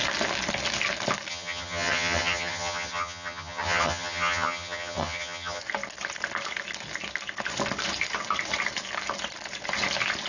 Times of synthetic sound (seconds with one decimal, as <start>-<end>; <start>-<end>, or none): 1.3-5.6